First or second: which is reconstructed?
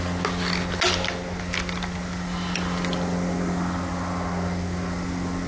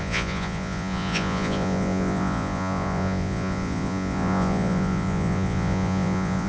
second